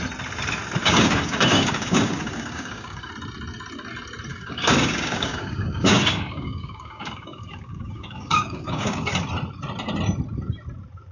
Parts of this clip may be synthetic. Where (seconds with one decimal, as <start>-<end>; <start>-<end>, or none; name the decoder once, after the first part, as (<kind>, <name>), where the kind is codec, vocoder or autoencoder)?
0.8-3.1 (codec, DAC); 4.3-9.1